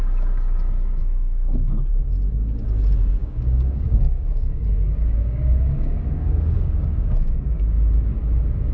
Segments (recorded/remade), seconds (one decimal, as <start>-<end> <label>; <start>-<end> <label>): 0.0-1.0 recorded; 1.0-1.9 remade; 1.9-3.2 recorded; 3.2-8.2 remade; 8.2-8.7 recorded